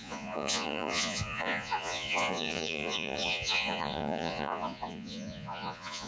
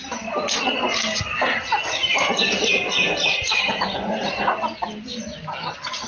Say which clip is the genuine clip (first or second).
second